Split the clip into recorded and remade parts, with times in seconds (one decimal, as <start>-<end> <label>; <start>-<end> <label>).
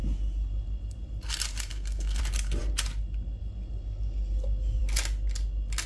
0.0-1.7 recorded; 1.7-2.2 remade; 2.2-5.9 recorded